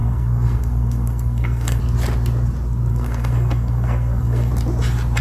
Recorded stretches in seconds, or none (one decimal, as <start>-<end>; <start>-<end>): 1.8-2.9; 4.5-5.2